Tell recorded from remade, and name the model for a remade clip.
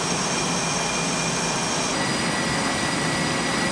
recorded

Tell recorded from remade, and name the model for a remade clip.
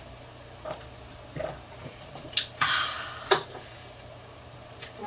recorded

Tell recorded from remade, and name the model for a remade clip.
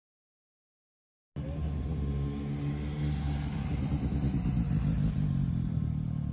recorded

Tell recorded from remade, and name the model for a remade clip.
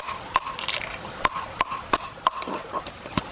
remade, vocoder, BigVGAN v2